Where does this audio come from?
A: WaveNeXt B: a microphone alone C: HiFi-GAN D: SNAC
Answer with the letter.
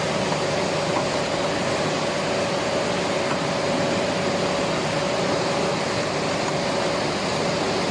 B